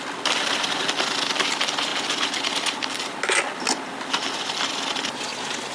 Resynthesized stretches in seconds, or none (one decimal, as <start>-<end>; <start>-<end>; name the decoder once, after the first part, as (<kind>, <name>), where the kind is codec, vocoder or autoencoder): none